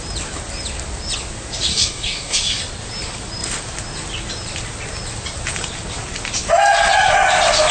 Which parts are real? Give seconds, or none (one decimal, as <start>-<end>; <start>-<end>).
0.0-1.7; 2.6-7.7